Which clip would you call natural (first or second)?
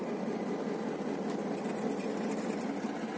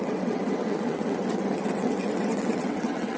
first